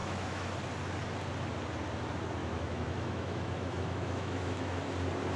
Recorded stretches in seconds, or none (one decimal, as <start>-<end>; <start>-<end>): 0.5-2.4; 4.9-5.4

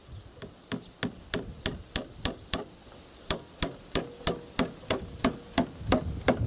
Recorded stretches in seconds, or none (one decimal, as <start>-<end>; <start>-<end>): 0.0-6.5

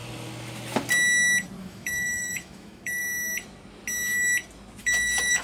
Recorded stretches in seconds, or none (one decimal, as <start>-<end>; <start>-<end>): 0.0-1.6; 3.0-4.8

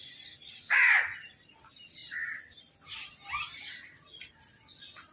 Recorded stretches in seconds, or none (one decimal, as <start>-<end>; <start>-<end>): 0.0-5.1

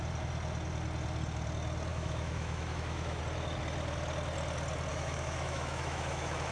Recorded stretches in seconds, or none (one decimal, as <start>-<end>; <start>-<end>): 0.0-1.9; 3.2-4.9

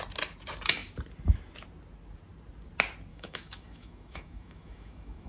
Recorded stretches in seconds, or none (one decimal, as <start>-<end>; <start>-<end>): 0.0-3.1

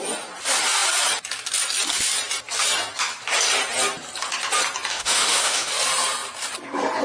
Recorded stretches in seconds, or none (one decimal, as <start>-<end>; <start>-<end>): 0.0-4.9; 5.7-7.0

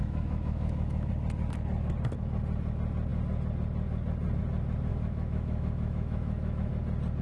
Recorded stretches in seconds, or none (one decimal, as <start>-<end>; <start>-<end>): 1.1-4.9; 6.7-7.2